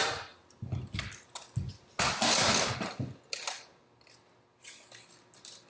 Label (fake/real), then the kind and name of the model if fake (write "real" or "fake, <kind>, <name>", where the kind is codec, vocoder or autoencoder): real